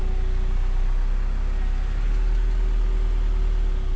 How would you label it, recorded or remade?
recorded